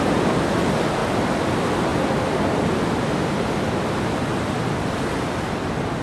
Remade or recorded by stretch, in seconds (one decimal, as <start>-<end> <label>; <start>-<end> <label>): 0.0-6.0 recorded

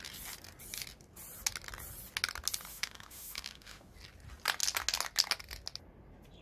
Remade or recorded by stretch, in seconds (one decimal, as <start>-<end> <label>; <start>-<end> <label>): 0.0-2.7 recorded; 2.7-3.9 remade; 3.9-6.4 recorded

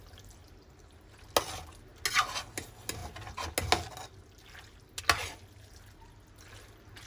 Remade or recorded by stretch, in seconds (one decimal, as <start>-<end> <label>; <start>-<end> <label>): 0.0-7.1 recorded